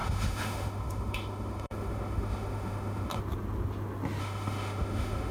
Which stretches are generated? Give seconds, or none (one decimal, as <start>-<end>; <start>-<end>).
0.0-3.2; 4.2-5.3